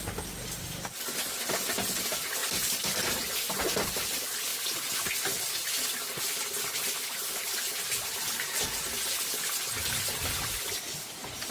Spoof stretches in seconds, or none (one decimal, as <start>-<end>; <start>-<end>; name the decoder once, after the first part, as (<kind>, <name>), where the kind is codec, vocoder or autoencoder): 2.4-3.6 (vocoder, BigVGAN v2)